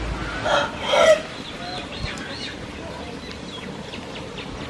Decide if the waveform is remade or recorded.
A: recorded